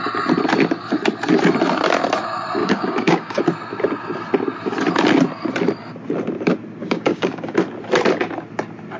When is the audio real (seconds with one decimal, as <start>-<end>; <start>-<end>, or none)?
0.0-2.6; 3.4-6.8; 7.5-9.0